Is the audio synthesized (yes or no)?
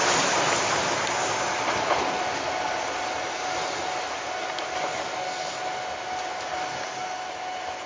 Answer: no